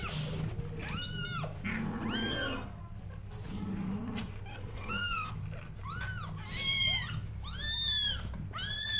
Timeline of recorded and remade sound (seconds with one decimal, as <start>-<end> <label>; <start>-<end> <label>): 0.0-2.3 recorded; 2.3-2.8 remade; 2.8-4.5 recorded; 4.5-5.3 remade; 5.3-9.0 recorded